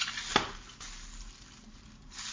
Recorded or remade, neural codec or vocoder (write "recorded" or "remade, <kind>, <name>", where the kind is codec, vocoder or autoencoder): recorded